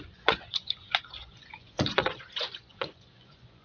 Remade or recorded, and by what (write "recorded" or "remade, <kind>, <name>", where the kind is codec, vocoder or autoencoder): remade, vocoder, Vocos